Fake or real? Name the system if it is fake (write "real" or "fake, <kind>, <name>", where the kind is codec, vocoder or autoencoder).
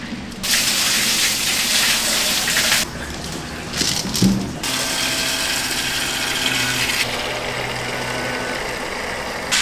real